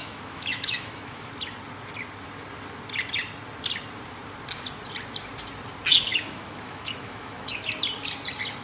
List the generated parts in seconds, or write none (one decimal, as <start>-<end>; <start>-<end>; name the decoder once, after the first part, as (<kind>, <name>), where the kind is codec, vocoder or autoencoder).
0.0-1.3 (autoencoder, DAC-VAE); 6.1-7.7